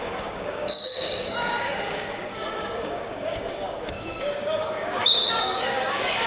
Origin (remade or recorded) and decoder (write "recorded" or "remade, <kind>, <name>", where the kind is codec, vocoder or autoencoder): remade, codec, DAC